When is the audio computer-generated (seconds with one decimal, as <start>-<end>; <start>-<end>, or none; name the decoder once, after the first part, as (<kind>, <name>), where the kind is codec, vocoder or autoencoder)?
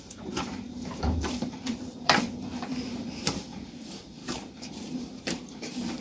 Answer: 0.0-6.0 (vocoder, BigVGAN v2)